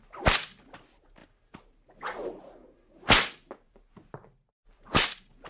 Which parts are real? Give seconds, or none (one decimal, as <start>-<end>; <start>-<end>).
0.0-5.5